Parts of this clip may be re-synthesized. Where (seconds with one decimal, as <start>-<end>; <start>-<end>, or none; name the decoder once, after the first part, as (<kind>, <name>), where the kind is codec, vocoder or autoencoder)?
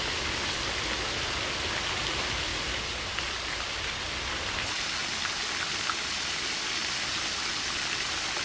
2.5-3.9 (vocoder, BigVGAN v2); 6.8-7.3